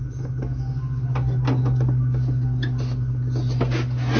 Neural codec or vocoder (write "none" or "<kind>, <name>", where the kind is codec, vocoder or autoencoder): none